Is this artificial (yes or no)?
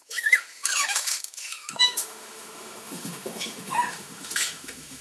yes